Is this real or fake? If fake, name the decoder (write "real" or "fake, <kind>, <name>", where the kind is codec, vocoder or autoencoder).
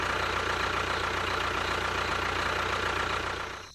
real